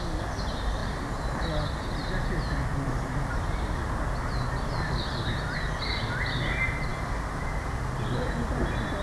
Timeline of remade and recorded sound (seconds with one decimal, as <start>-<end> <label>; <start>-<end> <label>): 0.0-2.7 recorded; 2.7-4.0 remade; 4.0-9.0 recorded